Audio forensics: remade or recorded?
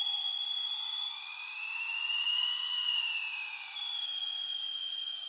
recorded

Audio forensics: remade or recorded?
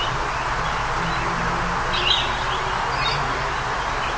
recorded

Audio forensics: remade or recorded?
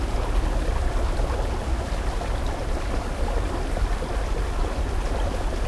recorded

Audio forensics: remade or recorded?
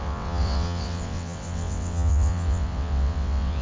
remade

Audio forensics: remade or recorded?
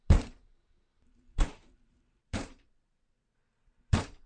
remade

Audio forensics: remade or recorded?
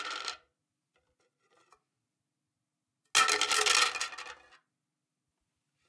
recorded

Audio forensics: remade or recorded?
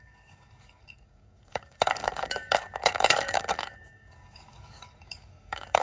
remade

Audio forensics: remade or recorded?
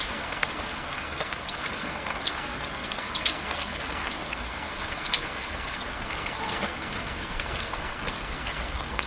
remade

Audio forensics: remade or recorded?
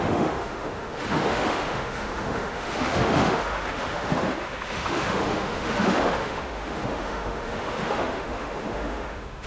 remade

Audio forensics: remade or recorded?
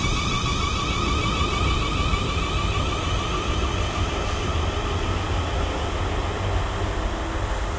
recorded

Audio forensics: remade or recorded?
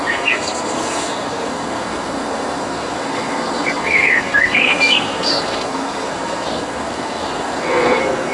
remade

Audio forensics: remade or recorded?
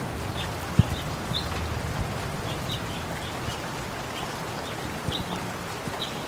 recorded